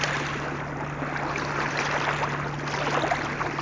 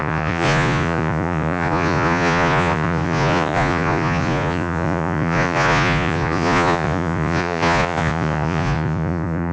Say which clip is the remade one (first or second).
second